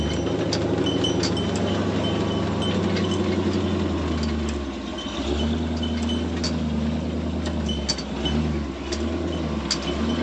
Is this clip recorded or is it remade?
recorded